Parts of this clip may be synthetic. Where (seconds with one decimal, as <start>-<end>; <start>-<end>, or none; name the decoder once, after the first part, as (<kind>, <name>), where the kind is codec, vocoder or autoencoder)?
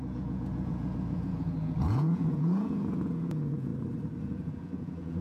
0.0-3.7 (vocoder, Vocos); 4.2-5.2